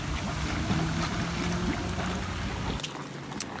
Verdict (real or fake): real